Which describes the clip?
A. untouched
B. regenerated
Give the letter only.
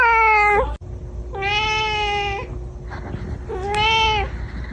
A